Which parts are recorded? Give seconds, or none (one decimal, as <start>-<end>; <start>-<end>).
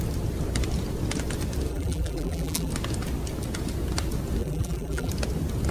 0.0-1.7; 2.7-4.4; 5.1-5.7